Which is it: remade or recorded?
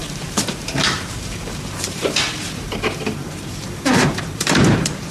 remade